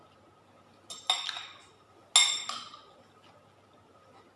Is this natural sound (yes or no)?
yes